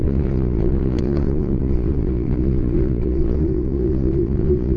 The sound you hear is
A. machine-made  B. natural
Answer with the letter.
A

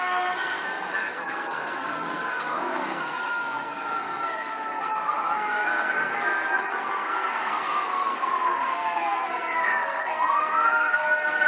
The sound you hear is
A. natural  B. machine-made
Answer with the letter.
B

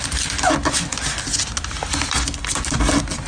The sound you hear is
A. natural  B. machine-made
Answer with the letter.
A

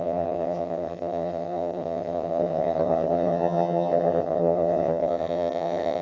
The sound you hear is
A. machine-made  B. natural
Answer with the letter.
A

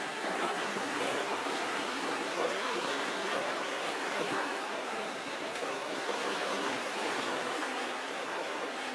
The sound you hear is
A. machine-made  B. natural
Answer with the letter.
A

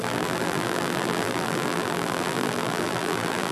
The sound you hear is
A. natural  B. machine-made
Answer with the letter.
B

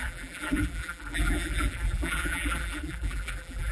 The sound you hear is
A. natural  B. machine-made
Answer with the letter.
B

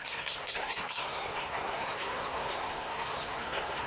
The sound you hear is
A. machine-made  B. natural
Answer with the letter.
A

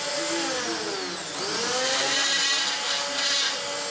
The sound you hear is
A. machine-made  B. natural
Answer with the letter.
B